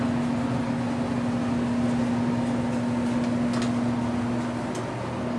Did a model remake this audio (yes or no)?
no